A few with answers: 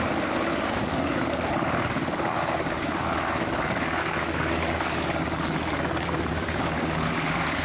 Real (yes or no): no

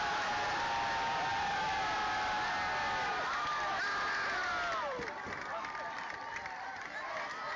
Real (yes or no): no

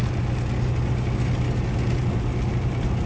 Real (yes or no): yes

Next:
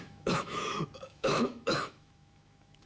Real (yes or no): no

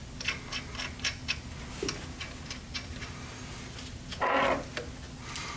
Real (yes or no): yes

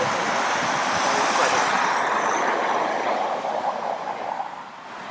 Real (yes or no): yes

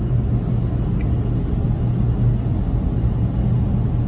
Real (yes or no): yes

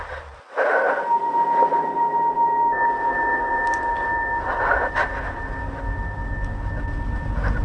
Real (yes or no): yes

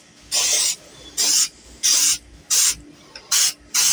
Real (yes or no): yes